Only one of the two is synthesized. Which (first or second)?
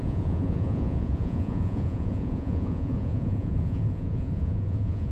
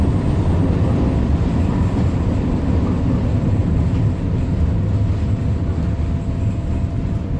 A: first